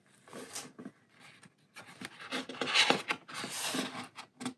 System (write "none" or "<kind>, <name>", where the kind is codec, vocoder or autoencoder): none